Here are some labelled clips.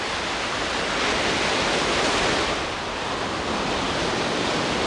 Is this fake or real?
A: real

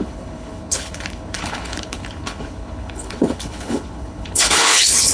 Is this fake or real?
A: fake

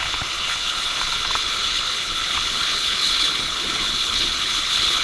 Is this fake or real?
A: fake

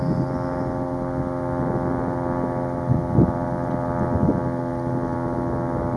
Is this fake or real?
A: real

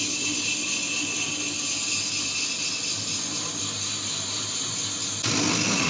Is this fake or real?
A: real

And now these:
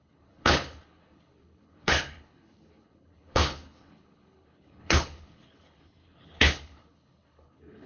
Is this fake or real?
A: fake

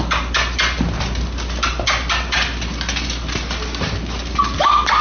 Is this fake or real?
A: real